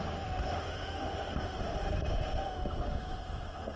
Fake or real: fake